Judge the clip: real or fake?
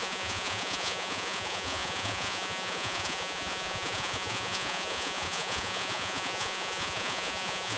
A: fake